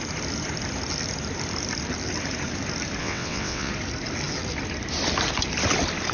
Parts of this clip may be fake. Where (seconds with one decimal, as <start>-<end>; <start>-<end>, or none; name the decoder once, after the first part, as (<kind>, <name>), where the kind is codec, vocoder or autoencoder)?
3.0-3.7 (vocoder, WaveNeXt)